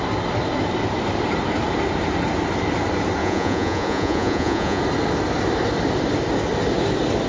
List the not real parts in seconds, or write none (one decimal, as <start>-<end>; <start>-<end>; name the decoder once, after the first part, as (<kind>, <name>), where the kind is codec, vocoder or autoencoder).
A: 3.2-4.8 (vocoder, Vocos)